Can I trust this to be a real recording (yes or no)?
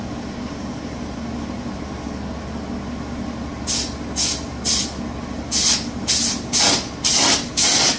yes